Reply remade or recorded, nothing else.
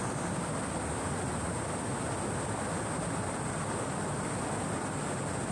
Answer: recorded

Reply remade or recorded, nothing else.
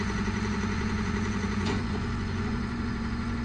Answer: remade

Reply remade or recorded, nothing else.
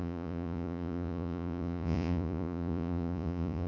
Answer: remade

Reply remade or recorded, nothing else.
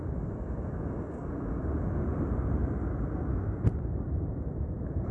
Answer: recorded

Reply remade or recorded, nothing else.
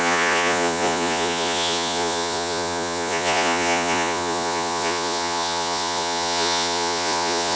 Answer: remade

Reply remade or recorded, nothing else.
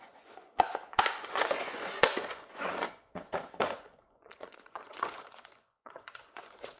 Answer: remade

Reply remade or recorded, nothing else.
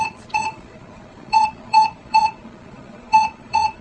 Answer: remade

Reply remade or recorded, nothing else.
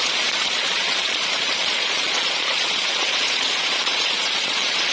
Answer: remade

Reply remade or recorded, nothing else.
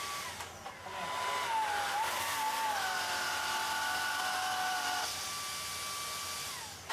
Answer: recorded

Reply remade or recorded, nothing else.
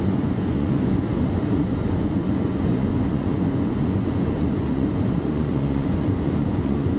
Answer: remade